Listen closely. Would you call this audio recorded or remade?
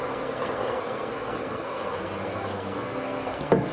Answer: remade